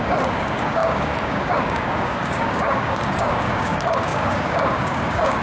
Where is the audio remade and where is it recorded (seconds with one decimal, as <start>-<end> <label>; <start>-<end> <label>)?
0.0-5.4 remade